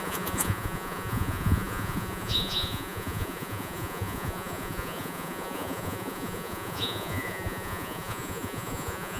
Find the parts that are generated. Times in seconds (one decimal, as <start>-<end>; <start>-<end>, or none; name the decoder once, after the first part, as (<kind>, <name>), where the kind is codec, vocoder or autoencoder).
0.0-9.2 (vocoder, Vocos)